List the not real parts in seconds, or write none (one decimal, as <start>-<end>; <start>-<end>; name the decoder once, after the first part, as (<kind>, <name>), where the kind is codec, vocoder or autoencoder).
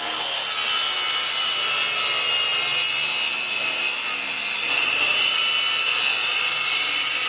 4.8-5.4 (vocoder, Vocos); 6.2-7.3